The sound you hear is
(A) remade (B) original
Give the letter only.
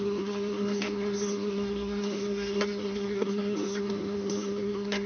A